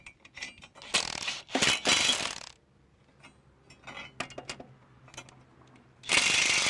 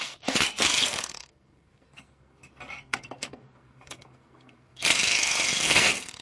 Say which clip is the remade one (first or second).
second